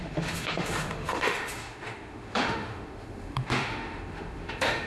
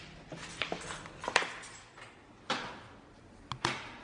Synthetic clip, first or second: first